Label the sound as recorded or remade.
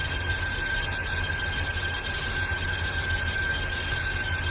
recorded